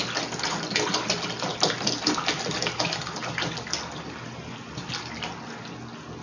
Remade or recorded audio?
recorded